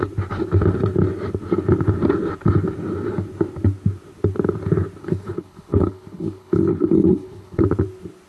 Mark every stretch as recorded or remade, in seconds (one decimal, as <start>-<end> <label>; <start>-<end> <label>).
0.0-5.0 recorded; 5.0-7.6 remade; 7.6-8.3 recorded